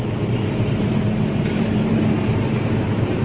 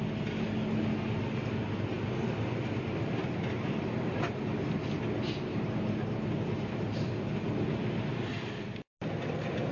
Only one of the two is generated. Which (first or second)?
first